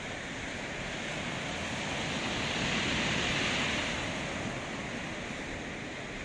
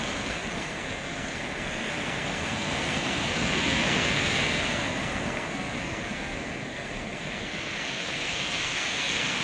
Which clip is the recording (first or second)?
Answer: first